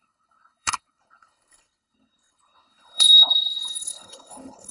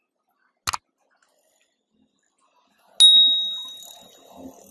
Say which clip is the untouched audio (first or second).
second